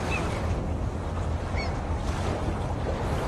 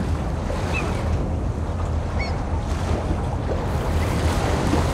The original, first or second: second